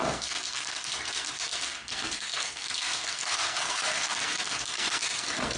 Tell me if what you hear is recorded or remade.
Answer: remade